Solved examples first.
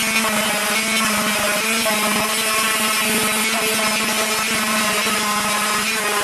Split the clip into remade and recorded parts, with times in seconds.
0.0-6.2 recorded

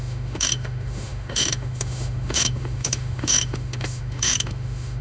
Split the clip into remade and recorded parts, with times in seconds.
0.0-5.0 remade

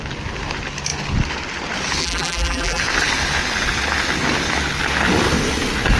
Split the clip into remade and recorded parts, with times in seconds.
0.0-2.0 recorded; 2.0-2.8 remade; 2.8-6.0 recorded

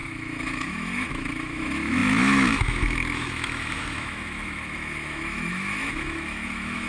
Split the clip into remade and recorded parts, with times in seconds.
0.0-6.9 remade

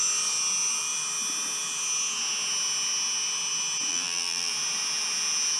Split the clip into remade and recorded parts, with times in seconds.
0.0-3.9 recorded; 3.9-4.5 remade; 4.5-5.6 recorded

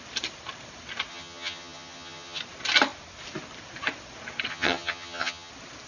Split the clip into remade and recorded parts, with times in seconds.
0.0-1.1 recorded; 1.1-2.4 remade; 2.4-4.5 recorded; 4.5-5.5 remade; 5.5-5.9 recorded

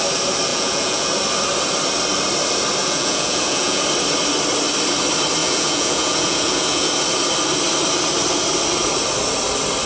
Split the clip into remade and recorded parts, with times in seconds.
0.0-0.5 recorded; 0.5-1.1 remade; 1.1-2.8 recorded; 2.8-3.8 remade; 3.8-5.4 recorded; 5.4-6.9 remade; 6.9-9.9 recorded